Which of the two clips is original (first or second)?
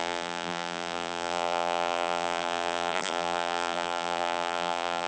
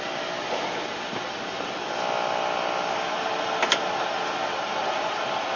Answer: second